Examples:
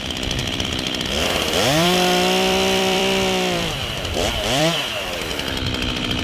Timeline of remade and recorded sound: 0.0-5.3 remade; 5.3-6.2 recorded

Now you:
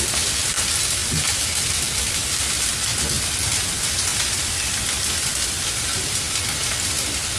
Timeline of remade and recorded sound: 0.0-0.4 recorded; 0.4-4.8 remade; 4.8-7.4 recorded

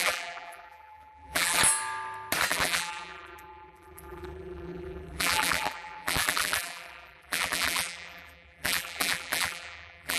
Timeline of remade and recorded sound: 0.0-1.6 remade; 1.6-2.5 recorded; 2.5-10.2 remade

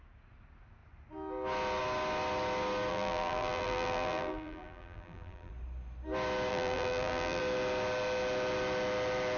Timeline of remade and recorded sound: 0.0-2.9 recorded; 2.9-5.5 remade; 5.5-6.5 recorded; 6.5-7.4 remade; 7.4-9.4 recorded

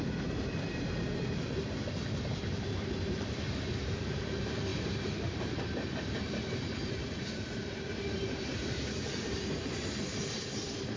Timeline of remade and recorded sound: 0.0-11.0 remade

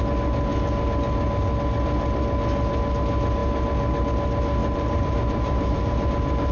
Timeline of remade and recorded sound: 0.0-4.6 recorded; 4.6-6.1 remade; 6.1-6.5 recorded

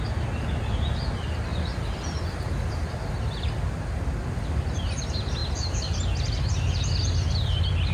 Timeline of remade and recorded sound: 0.0-5.4 recorded; 5.4-6.1 remade; 6.1-7.9 recorded